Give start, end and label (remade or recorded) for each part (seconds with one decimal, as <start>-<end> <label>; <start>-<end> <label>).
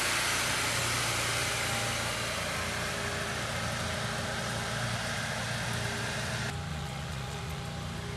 0.0-6.7 recorded; 6.7-7.6 remade; 7.6-8.2 recorded